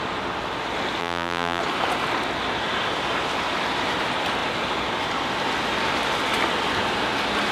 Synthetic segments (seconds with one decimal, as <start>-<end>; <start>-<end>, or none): 1.0-1.6